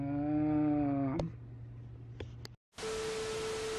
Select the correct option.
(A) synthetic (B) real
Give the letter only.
B